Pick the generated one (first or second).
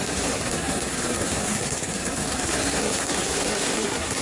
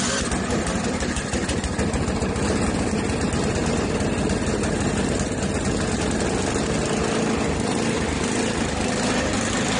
first